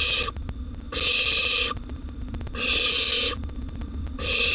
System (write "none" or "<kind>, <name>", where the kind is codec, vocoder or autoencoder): none